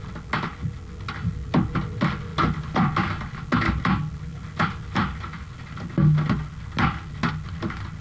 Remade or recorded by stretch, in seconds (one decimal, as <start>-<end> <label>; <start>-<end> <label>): 0.0-8.0 recorded